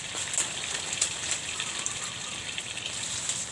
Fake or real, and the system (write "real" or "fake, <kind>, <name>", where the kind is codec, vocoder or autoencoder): real